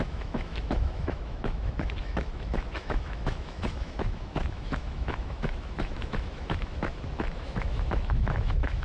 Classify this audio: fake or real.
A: fake